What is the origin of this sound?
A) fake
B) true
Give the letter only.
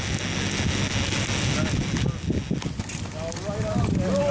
B